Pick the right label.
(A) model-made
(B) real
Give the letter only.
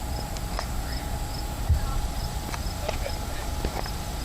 B